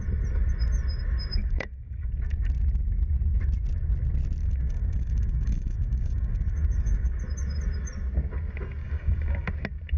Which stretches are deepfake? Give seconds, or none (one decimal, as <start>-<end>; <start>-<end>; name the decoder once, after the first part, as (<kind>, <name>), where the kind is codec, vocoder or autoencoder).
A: 1.4-2.1 (codec, DAC); 4.4-7.2; 8.8-9.5